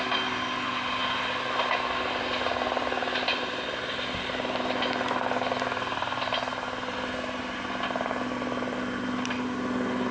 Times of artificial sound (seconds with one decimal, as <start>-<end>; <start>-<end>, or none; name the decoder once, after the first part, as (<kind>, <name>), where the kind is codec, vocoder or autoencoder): none